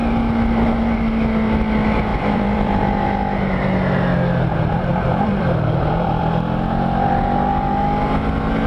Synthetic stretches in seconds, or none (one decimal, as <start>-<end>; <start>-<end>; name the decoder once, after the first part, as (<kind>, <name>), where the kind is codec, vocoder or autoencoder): 2.1-2.8 (vocoder, BigVGAN v2); 4.9-6.2